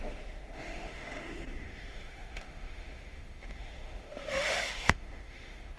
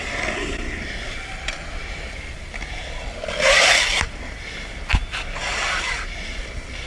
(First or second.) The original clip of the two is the second